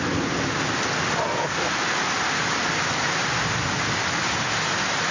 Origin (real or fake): real